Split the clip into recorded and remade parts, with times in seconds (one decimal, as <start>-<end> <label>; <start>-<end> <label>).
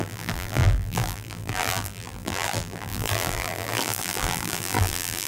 0.0-5.3 remade